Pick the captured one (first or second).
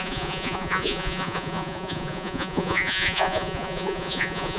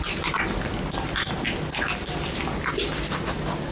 second